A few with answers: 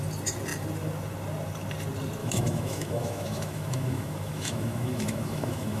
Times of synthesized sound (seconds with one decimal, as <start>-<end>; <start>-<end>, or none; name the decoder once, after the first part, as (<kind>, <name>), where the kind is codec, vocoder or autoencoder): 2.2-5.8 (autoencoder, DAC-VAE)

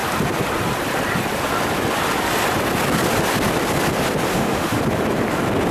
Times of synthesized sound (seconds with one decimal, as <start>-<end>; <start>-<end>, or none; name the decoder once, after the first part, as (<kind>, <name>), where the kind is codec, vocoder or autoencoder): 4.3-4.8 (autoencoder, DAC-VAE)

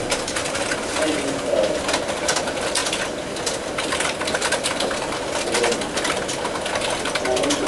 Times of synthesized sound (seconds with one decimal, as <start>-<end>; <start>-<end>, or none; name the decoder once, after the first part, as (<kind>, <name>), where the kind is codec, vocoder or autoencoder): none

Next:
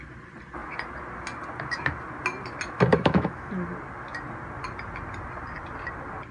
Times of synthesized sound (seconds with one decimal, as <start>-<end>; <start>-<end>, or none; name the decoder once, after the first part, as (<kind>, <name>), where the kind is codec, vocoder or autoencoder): 2.9-3.5 (autoencoder, DAC-VAE)